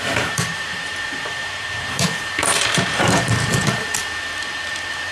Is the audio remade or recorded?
remade